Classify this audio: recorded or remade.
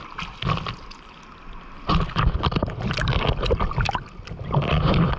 recorded